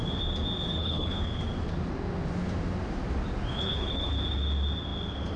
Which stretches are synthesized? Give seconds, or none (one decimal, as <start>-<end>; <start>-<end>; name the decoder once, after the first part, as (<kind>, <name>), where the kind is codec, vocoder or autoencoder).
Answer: 0.8-1.4 (codec, HILCodec); 3.5-4.1